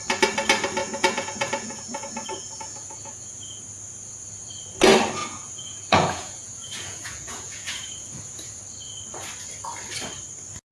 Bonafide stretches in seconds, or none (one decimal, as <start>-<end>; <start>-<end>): 0.0-0.8; 3.6-5.2; 8.6-10.7